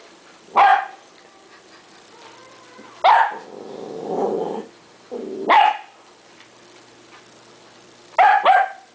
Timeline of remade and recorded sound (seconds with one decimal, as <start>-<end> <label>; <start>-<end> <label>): 0.0-8.9 recorded